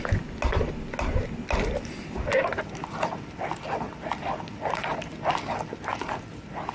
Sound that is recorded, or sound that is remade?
recorded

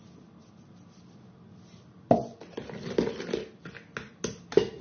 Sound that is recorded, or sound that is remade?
recorded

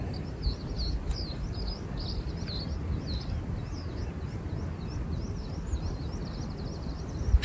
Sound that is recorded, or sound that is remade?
recorded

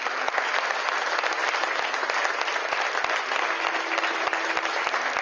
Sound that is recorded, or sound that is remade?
recorded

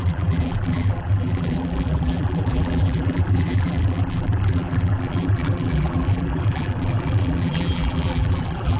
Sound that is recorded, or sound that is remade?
remade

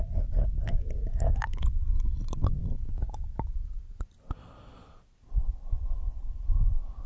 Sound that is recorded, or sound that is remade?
recorded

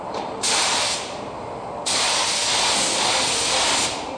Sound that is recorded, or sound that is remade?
recorded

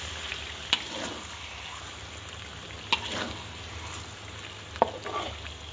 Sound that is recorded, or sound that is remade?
recorded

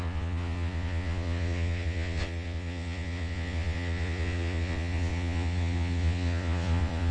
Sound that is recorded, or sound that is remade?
remade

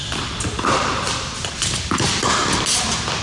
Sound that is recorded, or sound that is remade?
remade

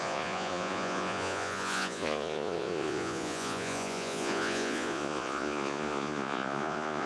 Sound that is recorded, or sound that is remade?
remade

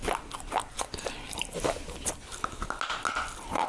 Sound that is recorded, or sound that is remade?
recorded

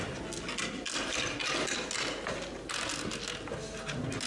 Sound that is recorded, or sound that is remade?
recorded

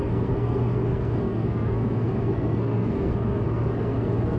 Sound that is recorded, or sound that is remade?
remade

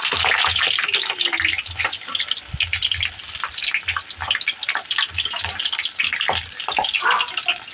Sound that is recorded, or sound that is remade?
recorded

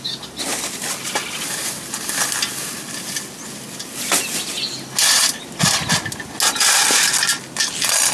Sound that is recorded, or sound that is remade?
recorded